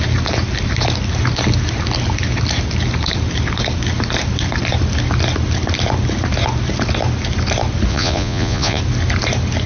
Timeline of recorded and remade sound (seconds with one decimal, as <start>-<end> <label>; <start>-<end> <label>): 0.0-7.9 recorded; 7.9-8.8 remade; 8.8-9.7 recorded